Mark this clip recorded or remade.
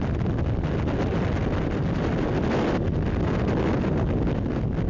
recorded